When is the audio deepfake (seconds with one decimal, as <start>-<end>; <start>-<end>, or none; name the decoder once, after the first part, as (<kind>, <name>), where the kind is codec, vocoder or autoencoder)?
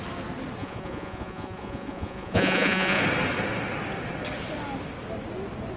0.6-3.0 (vocoder, Vocos)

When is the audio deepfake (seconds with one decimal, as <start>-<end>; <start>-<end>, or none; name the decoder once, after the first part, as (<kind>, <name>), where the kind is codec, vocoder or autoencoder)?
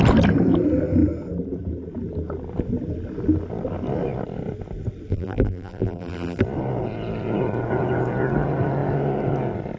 5.1-6.4 (vocoder, BigVGAN v2)